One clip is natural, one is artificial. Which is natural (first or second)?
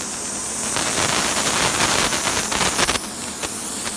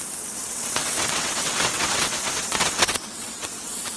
first